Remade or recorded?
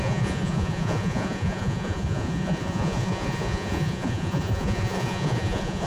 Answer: remade